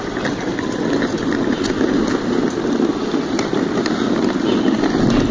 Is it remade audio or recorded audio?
recorded